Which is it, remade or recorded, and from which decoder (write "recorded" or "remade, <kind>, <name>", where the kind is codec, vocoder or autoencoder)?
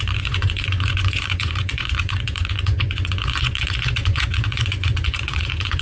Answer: remade, vocoder, Vocos